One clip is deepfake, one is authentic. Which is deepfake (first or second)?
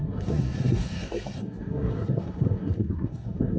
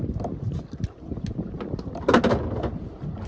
first